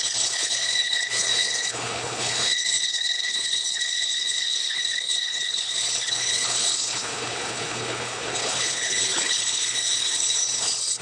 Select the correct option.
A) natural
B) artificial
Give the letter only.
B